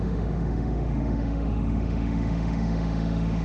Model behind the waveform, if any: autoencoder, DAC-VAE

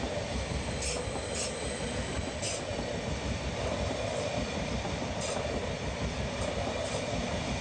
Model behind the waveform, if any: none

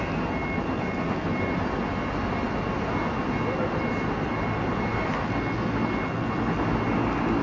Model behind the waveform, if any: none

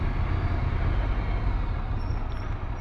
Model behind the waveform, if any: none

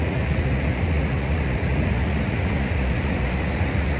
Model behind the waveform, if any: vocoder, Vocos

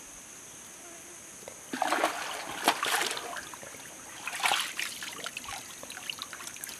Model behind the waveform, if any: none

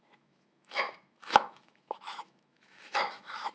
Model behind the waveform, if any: autoencoder, DAC-VAE